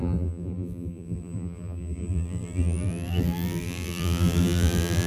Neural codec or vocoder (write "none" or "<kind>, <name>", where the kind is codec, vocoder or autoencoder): vocoder, BigVGAN v2